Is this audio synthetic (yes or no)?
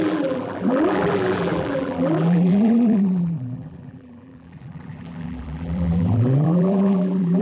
yes